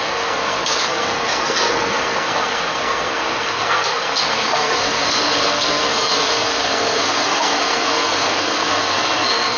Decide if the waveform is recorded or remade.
remade